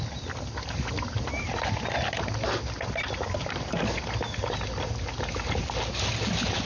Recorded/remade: recorded